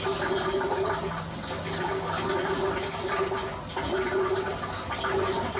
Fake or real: real